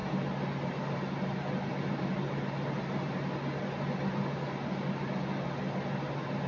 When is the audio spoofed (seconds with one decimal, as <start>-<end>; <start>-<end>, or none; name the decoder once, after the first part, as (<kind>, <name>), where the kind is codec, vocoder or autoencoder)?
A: none